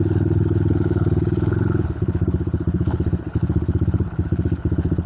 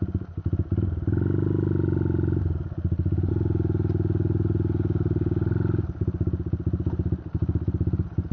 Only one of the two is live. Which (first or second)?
second